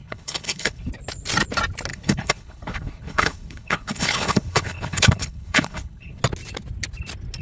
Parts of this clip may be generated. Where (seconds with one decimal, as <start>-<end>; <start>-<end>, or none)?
0.0-0.9; 1.9-6.2